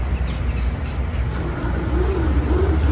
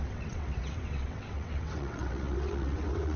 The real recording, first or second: first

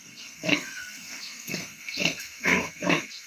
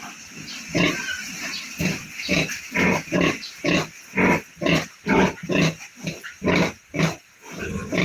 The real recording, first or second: second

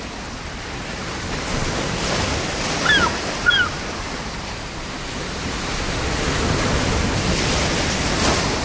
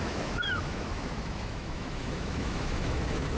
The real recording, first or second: first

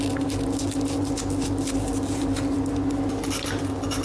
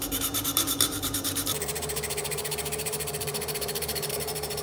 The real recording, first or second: first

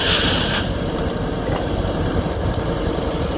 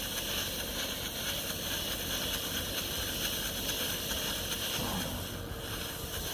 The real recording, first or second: second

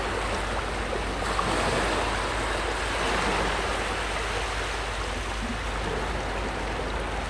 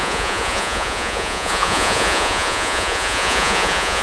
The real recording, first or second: first